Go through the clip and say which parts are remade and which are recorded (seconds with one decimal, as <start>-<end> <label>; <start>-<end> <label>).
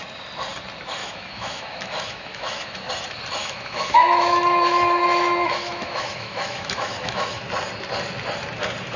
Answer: 0.0-1.0 recorded; 1.0-2.9 remade; 2.9-3.4 recorded; 3.4-7.4 remade; 7.4-9.0 recorded